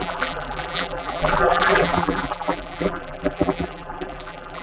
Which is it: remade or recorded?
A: remade